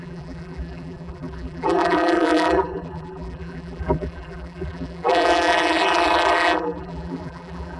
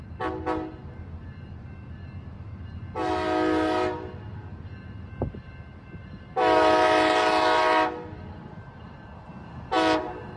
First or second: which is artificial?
first